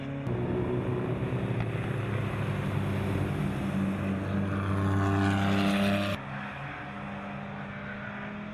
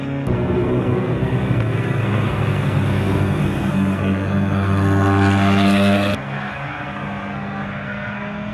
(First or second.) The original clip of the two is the first